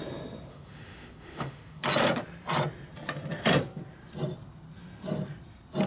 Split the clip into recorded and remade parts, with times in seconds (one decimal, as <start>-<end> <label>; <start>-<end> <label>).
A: 0.0-0.5 recorded; 0.5-1.8 remade; 1.8-5.9 recorded